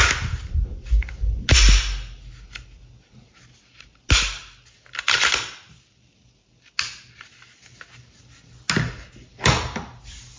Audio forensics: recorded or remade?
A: recorded